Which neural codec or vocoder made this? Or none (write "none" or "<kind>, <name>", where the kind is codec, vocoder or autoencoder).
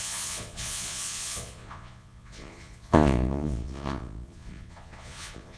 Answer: vocoder, Vocos